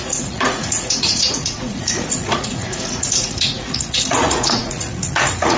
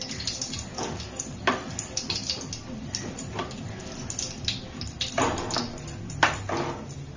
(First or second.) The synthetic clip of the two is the first